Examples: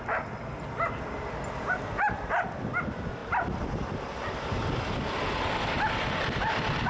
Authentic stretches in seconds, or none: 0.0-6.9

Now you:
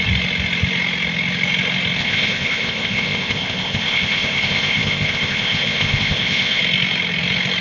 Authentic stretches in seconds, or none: 0.0-2.0; 6.6-7.6

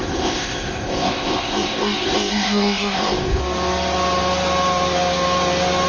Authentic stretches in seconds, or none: 3.4-5.9

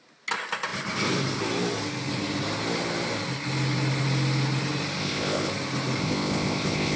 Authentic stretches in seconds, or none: 0.0-5.0; 5.5-6.0